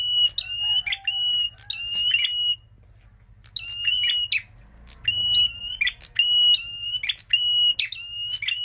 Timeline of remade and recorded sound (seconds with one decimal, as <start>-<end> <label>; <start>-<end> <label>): 0.0-5.2 recorded; 5.2-6.0 remade; 6.0-8.6 recorded